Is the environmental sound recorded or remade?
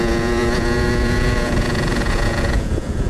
remade